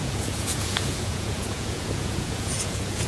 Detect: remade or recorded remade